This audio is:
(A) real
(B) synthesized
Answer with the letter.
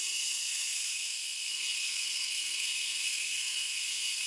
B